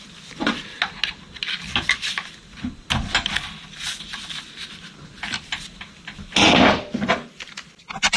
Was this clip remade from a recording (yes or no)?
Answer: no